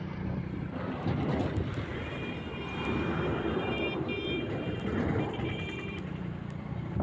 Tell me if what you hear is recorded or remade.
remade